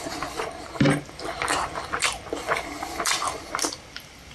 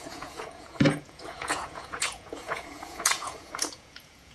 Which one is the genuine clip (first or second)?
first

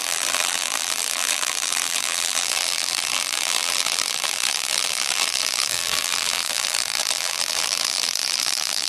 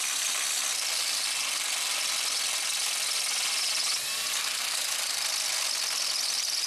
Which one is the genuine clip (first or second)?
second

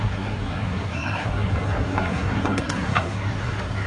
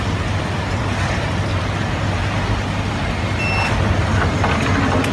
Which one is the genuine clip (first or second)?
second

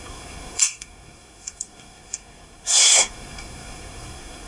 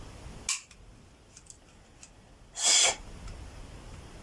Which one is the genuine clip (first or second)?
second